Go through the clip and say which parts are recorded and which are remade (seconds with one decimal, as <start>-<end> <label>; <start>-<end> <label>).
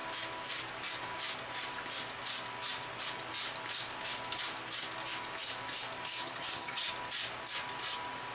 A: 0.0-6.2 recorded; 6.2-6.9 remade; 6.9-8.3 recorded